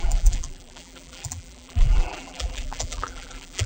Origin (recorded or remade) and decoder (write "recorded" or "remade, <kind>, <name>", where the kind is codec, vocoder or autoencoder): remade, vocoder, BigVGAN v2